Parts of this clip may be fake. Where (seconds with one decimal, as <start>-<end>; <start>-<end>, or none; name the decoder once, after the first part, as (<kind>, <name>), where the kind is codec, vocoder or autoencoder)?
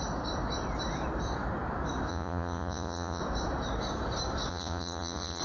2.1-3.2 (vocoder, Vocos); 4.5-5.4